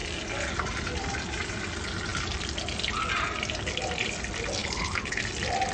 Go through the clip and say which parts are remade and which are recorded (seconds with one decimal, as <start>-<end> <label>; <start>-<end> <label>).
0.0-4.6 recorded; 4.6-5.2 remade; 5.2-5.7 recorded